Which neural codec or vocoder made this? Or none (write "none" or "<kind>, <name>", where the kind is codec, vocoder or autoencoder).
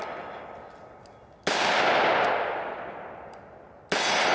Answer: none